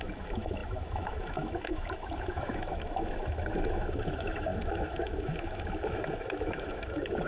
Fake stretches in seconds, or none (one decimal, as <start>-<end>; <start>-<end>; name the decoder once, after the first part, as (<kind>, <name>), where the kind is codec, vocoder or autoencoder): 0.0-7.3 (autoencoder, DAC-VAE)